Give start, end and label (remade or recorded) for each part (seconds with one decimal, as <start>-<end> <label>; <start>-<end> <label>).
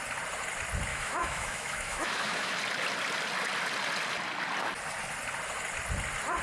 0.0-0.9 recorded; 0.9-2.5 remade; 2.5-6.4 recorded